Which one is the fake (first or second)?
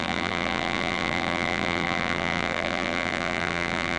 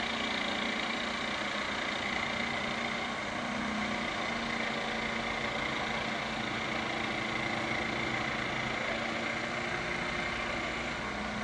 first